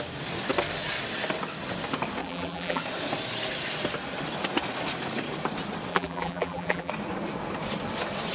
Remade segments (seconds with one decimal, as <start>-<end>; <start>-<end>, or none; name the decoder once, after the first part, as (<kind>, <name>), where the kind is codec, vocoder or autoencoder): 2.2-2.8 (vocoder, BigVGAN v2); 5.9-6.9